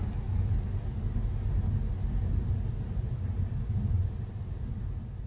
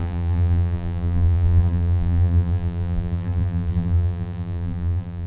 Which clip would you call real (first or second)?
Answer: first